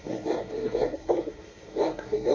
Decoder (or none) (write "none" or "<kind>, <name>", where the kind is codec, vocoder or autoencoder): codec, SNAC